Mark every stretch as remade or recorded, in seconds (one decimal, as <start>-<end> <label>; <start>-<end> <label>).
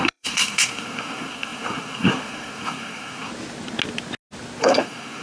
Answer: 0.0-3.3 remade; 3.3-4.6 recorded; 4.6-5.2 remade